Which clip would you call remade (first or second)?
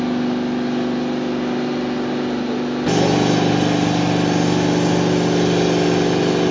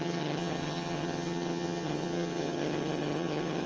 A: second